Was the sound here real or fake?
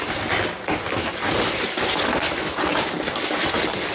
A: real